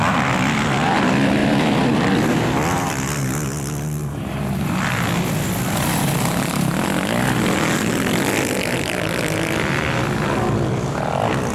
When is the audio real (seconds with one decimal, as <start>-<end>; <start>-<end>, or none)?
0.0-11.5